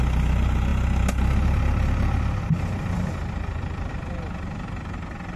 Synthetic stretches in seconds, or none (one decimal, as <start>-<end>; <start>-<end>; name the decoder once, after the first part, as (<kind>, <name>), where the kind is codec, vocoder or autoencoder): none